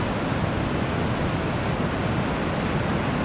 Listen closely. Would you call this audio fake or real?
real